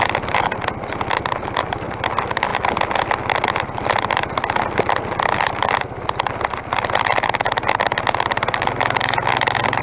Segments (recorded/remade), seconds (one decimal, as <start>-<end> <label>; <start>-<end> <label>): 0.0-9.8 recorded